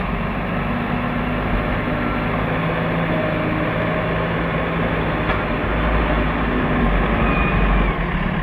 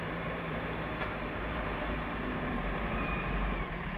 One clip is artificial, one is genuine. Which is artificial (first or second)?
second